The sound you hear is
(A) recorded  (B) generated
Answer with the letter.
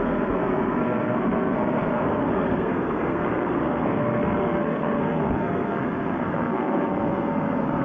B